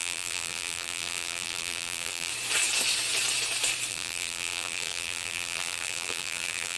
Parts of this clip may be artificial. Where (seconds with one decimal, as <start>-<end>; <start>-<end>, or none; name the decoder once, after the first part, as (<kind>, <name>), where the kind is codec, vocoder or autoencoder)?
0.0-2.3 (vocoder, BigVGAN v2); 3.9-6.8